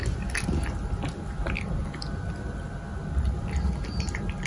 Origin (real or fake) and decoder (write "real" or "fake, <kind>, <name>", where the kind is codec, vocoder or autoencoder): real